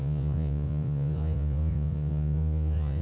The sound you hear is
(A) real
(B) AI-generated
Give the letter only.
B